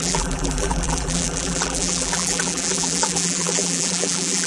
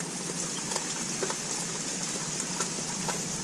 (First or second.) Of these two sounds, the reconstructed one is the first